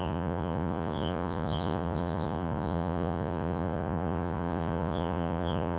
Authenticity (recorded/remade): remade